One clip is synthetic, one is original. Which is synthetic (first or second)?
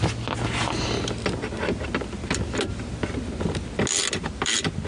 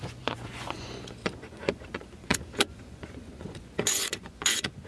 second